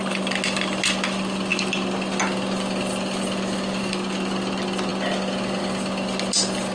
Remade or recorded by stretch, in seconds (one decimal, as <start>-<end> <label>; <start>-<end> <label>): 0.0-6.7 recorded